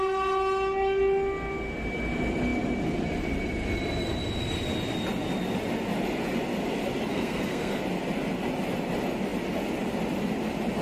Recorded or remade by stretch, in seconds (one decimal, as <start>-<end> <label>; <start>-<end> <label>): 0.0-7.1 recorded; 7.1-7.8 remade; 7.8-10.8 recorded